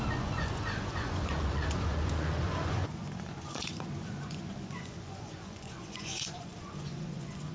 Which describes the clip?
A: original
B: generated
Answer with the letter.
B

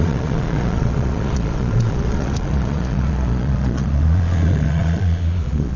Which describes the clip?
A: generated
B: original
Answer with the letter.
A